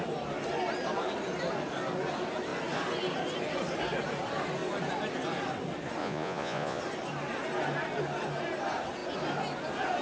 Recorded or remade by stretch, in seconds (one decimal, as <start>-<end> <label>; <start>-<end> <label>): 0.0-6.0 recorded; 6.0-6.8 remade; 6.8-10.0 recorded